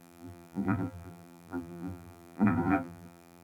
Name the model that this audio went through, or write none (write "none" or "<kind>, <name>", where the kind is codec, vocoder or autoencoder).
vocoder, BigVGAN v2